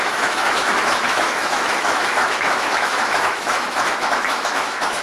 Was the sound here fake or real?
fake